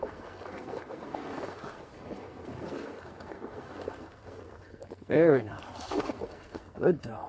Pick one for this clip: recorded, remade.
remade